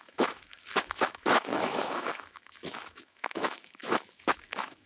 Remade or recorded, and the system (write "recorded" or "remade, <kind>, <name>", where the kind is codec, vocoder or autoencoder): remade, autoencoder, DAC-VAE